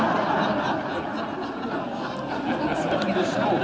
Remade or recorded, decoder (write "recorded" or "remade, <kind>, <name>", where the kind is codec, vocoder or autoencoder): recorded